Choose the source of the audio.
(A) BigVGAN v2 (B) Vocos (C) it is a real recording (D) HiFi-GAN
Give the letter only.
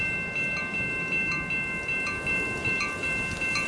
C